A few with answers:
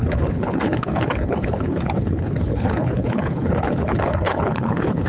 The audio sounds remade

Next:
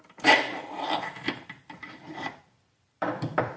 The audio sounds remade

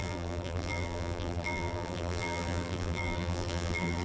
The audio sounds remade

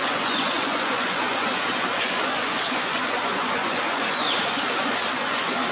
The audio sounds remade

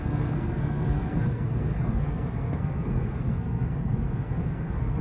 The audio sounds remade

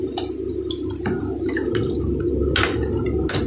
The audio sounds recorded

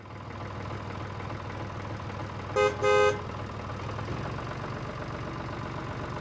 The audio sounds recorded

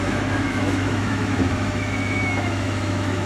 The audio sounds remade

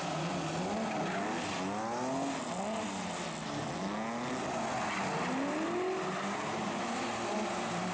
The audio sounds recorded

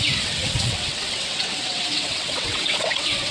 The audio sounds remade